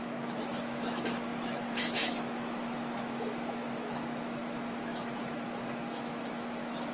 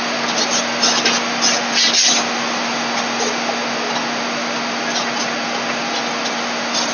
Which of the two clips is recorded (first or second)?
second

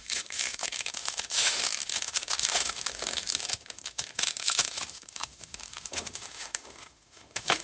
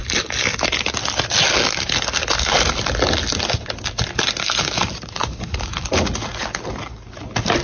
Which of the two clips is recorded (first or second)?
second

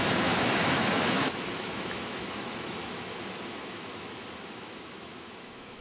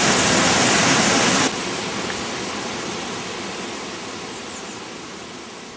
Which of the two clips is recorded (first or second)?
second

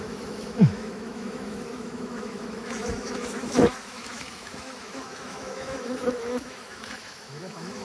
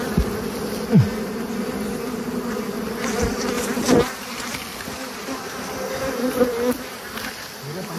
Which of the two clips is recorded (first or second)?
second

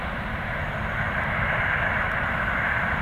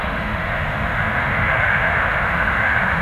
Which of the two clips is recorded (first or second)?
first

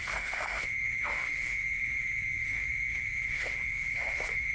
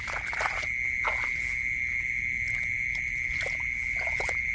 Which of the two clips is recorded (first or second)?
second